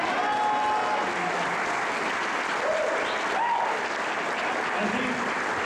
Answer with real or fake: real